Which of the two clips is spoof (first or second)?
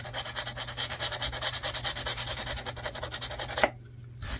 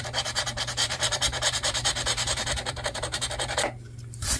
second